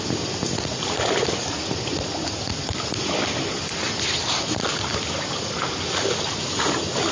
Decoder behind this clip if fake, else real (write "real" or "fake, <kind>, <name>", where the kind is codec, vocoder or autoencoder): real